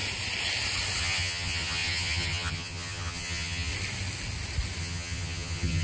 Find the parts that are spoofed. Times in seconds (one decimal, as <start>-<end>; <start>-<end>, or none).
1.0-3.7; 4.8-5.8